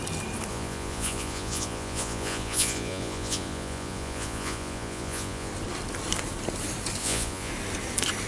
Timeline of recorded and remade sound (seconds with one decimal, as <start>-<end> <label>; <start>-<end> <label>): 0.0-0.5 recorded; 0.5-5.5 remade; 5.5-7.0 recorded; 7.0-7.5 remade; 7.5-8.3 recorded

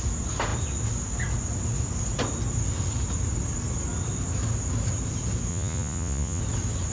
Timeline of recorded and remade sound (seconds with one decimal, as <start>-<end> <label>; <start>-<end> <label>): 0.0-5.5 recorded; 5.5-6.4 remade; 6.4-6.9 recorded

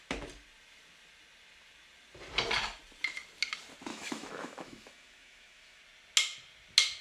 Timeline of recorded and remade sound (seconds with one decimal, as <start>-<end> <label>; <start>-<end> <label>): 0.0-3.9 recorded; 3.9-5.8 remade; 5.8-7.0 recorded

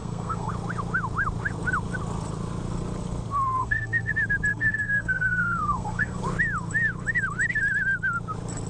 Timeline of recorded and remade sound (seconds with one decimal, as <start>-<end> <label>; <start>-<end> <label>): 0.0-0.5 remade; 0.5-3.6 recorded; 3.6-4.1 remade; 4.1-4.5 recorded; 4.5-6.2 remade; 6.2-8.7 recorded

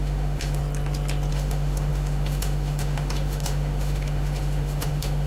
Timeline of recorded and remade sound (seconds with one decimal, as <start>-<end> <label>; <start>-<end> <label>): 0.0-0.6 remade; 0.6-1.3 recorded; 1.3-5.3 remade

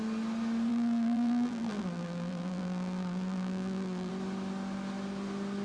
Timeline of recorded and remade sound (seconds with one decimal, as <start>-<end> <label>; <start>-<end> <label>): 0.0-0.7 recorded; 0.7-4.1 remade; 4.1-5.6 recorded

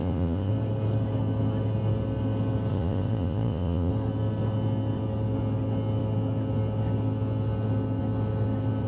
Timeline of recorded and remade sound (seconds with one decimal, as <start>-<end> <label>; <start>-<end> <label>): 0.0-0.5 remade; 0.5-2.7 recorded; 2.7-3.9 remade; 3.9-8.9 recorded